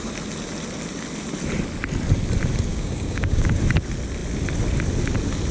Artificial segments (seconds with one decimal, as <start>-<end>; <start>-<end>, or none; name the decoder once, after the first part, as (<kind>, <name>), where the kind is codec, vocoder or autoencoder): 2.7-3.6 (codec, DAC)